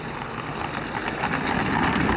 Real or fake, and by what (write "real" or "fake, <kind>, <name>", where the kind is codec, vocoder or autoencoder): real